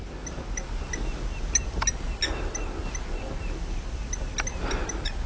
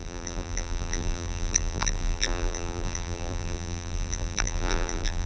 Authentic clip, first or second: first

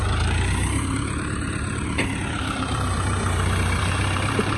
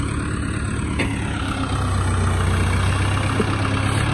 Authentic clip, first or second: second